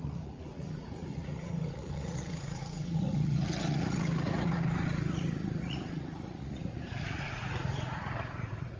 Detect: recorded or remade remade